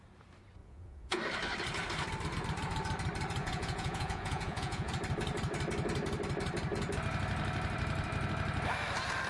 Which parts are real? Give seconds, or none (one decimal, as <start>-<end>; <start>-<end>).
0.0-0.6; 1.2-3.4; 4.9-9.3